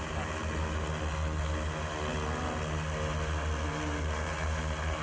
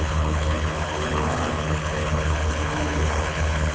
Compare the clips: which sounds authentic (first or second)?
first